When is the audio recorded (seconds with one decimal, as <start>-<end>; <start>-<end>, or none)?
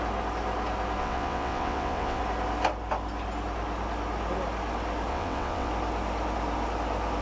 0.0-1.0; 2.2-5.1; 5.7-7.2